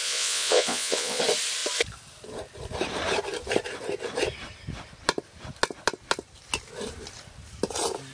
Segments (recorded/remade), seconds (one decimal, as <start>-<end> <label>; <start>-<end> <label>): 0.0-1.2 remade; 1.2-8.1 recorded